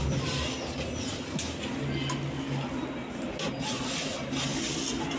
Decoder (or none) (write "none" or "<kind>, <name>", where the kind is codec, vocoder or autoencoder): none